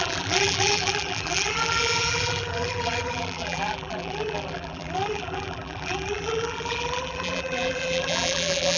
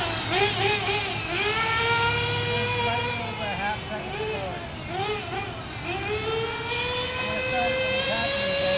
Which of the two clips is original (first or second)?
second